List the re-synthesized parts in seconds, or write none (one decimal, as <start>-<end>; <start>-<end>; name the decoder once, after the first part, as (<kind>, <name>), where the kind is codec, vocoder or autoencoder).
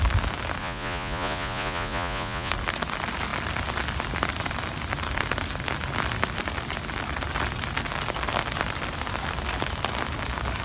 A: 0.6-2.5 (vocoder, Vocos)